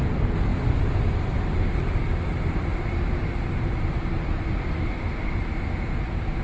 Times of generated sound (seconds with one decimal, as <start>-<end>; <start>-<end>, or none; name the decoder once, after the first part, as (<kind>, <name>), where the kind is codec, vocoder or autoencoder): none